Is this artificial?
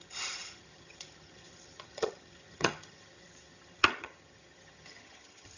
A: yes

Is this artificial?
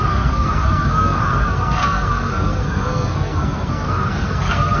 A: yes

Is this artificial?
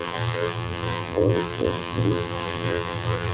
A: yes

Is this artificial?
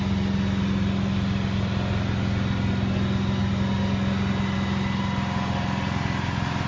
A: no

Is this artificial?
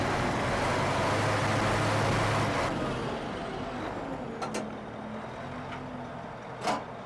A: no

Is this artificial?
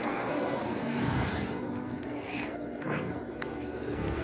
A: yes